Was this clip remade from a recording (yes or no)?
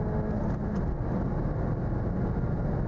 no